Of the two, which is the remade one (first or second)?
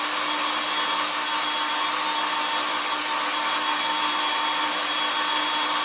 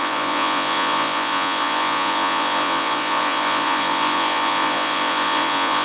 second